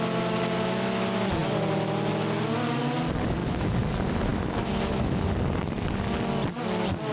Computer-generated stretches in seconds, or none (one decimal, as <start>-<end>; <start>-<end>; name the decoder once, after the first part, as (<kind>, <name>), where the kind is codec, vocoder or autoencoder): 3.4-3.9 (autoencoder, DAC-VAE); 4.3-5.1